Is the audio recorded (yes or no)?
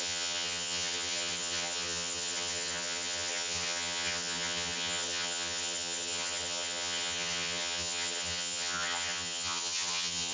no